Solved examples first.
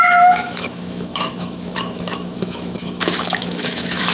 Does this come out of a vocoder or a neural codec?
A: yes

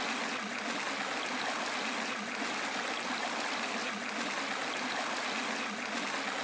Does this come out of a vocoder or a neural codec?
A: no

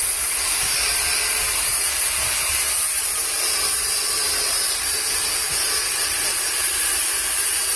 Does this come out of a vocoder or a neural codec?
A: no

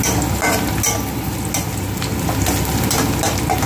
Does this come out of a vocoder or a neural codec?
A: no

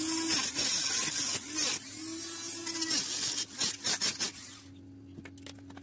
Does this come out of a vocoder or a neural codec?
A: no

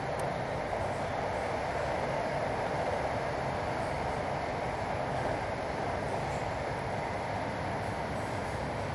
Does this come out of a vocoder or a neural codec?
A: no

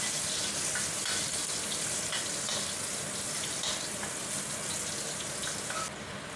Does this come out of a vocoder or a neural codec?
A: no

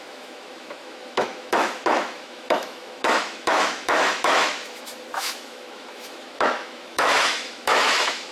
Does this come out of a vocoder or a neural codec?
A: yes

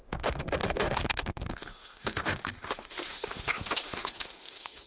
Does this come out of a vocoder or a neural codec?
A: yes